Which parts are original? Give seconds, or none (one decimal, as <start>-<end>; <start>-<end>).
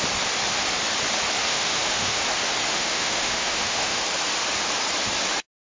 0.0-1.5; 2.2-2.7; 4.0-5.7